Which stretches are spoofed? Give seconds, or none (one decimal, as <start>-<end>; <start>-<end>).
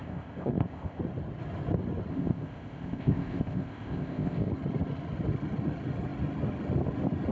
0.0-1.0; 2.1-4.5